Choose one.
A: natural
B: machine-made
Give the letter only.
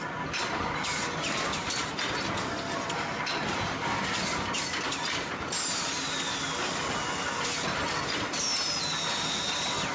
A